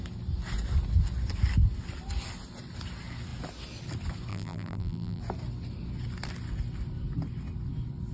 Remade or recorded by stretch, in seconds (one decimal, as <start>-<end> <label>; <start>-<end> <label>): 0.0-4.3 recorded; 4.3-5.2 remade; 5.2-8.1 recorded

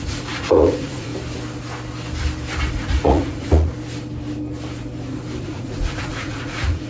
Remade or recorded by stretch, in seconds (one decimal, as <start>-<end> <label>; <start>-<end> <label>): 0.0-1.1 remade; 1.1-2.7 recorded; 2.7-3.7 remade; 3.7-5.4 recorded; 5.4-6.9 remade

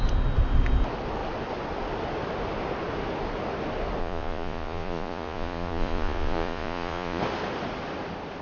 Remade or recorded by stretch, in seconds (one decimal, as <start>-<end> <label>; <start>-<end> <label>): 0.0-4.0 recorded; 4.0-7.2 remade; 7.2-8.4 recorded

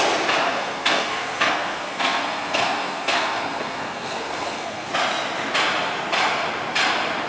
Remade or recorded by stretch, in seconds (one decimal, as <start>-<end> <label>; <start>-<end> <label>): 0.0-0.5 recorded; 0.5-4.9 remade; 4.9-7.3 recorded

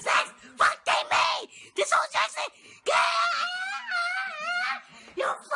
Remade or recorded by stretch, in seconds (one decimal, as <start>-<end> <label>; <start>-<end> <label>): 0.0-5.6 recorded

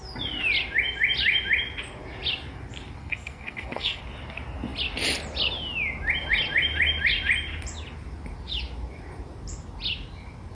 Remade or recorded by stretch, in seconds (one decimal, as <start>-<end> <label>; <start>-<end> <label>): 0.0-3.0 recorded; 3.0-4.0 remade; 4.0-10.5 recorded

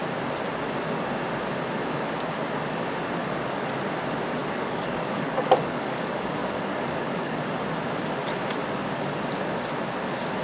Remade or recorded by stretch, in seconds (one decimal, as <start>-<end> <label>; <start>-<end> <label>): 0.0-4.4 recorded; 4.4-7.5 remade; 7.5-10.4 recorded